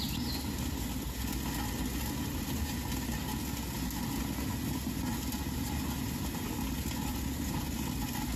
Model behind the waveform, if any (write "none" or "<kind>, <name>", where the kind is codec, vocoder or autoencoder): none